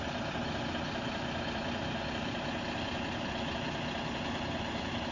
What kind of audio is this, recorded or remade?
recorded